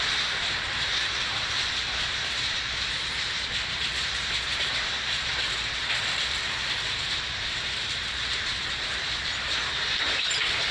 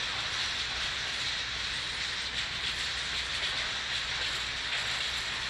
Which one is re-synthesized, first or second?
first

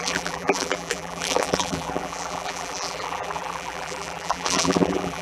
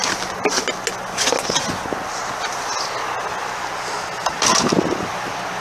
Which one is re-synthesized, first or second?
first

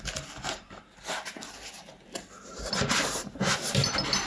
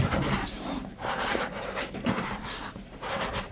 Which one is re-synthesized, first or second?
second